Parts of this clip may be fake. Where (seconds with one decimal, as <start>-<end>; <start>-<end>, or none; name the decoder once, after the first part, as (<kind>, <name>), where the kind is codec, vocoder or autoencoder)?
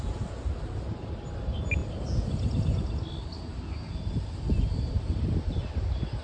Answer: none